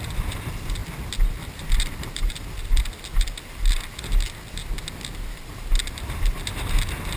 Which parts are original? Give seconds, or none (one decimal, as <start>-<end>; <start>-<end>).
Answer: 0.0-7.2